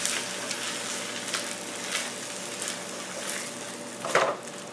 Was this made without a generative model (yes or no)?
yes